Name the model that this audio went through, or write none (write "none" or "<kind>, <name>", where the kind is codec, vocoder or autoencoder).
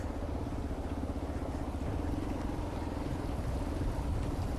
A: none